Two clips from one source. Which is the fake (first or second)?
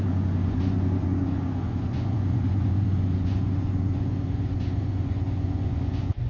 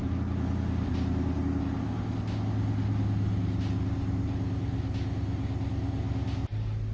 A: first